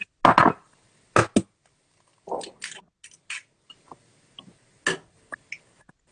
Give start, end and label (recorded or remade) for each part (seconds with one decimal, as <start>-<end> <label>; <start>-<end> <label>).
0.0-6.1 recorded